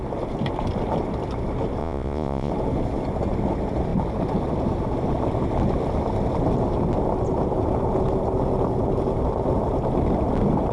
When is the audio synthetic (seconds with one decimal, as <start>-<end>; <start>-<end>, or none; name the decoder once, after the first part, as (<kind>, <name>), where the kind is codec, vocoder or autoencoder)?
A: 1.8-2.5 (vocoder, Vocos)